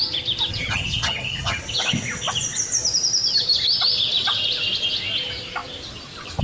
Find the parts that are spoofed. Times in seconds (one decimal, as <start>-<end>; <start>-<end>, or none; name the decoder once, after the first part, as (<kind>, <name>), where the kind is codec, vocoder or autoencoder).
0.5-1.6 (vocoder, HiFi-GAN)